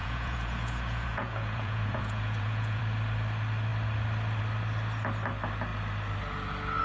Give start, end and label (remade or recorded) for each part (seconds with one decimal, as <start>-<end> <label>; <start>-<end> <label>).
0.0-2.8 remade; 2.8-6.8 recorded